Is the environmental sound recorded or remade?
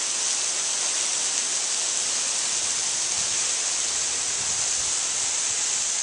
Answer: recorded